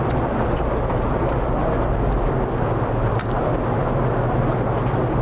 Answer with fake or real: real